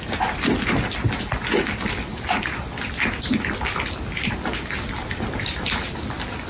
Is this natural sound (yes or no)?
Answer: yes